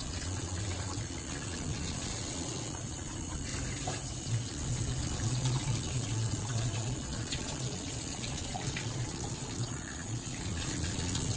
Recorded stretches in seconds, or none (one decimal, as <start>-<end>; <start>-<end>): 3.5-4.2

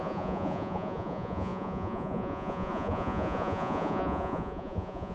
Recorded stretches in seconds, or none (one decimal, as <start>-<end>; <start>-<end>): none

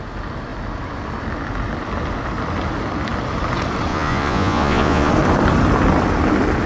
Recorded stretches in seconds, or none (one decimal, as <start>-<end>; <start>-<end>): 0.0-3.9; 5.1-6.7